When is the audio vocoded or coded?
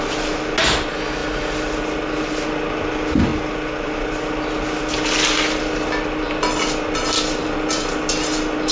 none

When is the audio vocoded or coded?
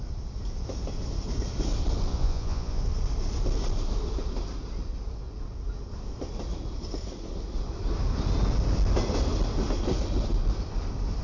2.1-2.8 (vocoder, Vocos)